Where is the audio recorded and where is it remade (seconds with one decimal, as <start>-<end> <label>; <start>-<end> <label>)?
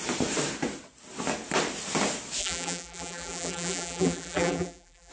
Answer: 0.0-2.4 recorded; 2.4-5.1 remade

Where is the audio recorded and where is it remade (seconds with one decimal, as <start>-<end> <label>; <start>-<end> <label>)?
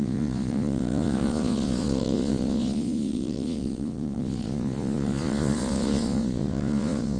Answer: 0.0-7.2 remade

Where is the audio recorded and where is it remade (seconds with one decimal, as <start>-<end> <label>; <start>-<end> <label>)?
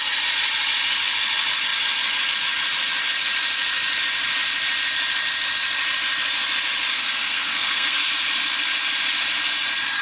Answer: 0.0-6.9 recorded; 6.9-8.1 remade; 8.1-10.0 recorded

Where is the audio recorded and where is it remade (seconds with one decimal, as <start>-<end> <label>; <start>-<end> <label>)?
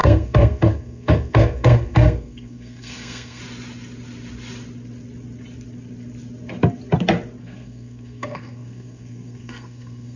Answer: 0.0-3.4 remade; 3.4-7.4 recorded; 7.4-10.2 remade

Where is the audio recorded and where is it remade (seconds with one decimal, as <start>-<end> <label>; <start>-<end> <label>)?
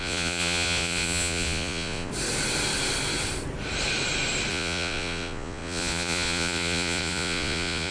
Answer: 0.0-2.1 remade; 2.1-4.5 recorded; 4.5-7.9 remade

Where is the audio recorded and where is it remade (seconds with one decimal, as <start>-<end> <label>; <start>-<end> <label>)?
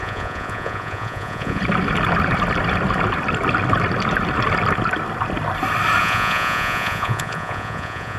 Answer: 0.0-1.6 remade; 1.6-6.0 recorded; 6.0-8.2 remade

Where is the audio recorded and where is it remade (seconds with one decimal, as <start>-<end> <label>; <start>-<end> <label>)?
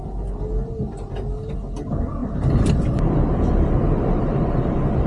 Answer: 0.0-5.1 recorded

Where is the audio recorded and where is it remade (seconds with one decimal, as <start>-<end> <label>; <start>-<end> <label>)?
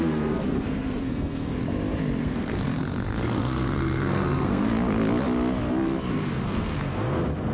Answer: 0.0-1.6 remade; 1.6-2.2 recorded; 2.2-4.7 remade; 4.7-6.1 recorded; 6.1-7.5 remade